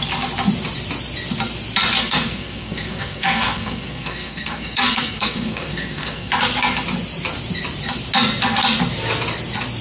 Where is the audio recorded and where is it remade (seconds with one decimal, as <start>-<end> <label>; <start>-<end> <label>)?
0.0-2.0 recorded; 2.0-6.3 remade; 6.3-9.8 recorded